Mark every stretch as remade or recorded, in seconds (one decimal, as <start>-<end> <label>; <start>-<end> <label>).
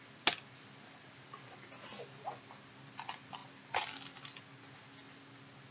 0.0-5.7 recorded